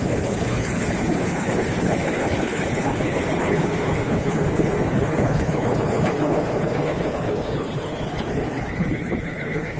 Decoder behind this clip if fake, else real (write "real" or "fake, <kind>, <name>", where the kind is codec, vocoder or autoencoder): fake, codec, HILCodec